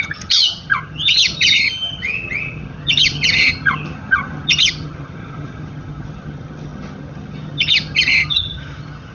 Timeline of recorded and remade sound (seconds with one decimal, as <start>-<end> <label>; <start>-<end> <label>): 0.0-9.1 remade